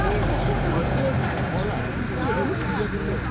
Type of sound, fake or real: real